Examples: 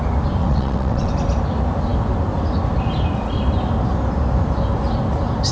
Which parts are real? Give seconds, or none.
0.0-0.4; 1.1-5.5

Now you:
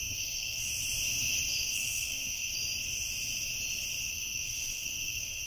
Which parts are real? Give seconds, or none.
0.7-1.5; 2.5-4.1

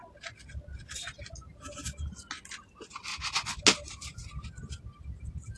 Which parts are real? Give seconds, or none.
0.0-3.1; 3.6-5.6